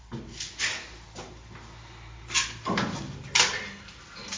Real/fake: real